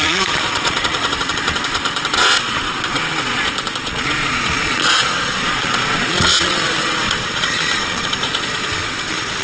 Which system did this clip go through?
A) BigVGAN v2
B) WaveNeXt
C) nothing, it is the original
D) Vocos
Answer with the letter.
D